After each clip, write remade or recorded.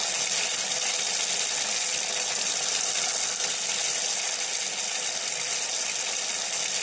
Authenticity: recorded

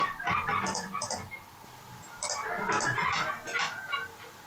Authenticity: recorded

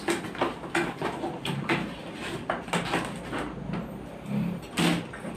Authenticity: recorded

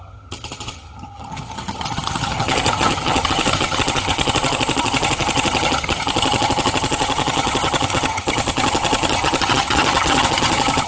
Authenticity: remade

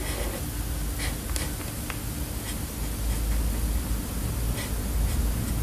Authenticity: recorded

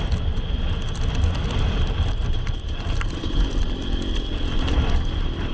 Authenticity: recorded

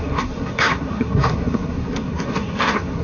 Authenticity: remade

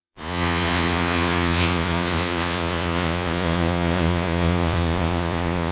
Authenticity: remade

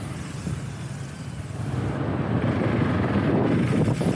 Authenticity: recorded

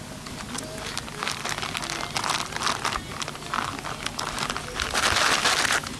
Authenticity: recorded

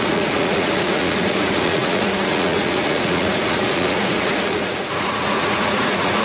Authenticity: remade